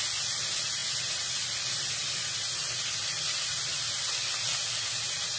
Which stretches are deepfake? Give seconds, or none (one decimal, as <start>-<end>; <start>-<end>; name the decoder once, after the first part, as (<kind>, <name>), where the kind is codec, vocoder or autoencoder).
none